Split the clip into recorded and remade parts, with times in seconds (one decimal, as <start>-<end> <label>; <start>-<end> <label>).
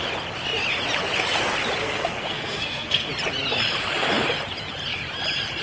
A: 0.0-1.8 recorded; 1.8-3.1 remade; 3.1-5.6 recorded